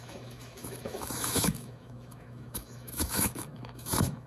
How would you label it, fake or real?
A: fake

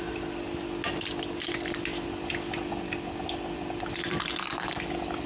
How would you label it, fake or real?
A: real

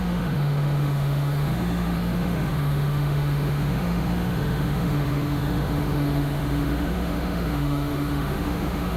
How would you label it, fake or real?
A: fake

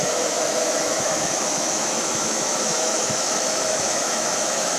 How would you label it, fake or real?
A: fake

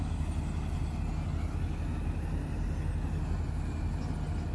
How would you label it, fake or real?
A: real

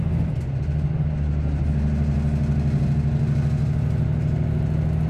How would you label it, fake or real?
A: real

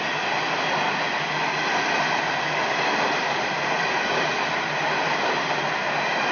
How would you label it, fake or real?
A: real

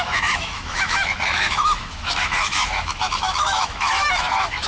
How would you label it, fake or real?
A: fake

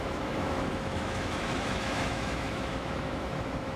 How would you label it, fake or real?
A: fake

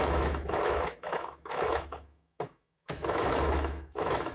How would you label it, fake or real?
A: fake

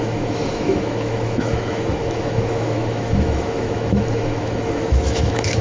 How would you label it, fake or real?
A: fake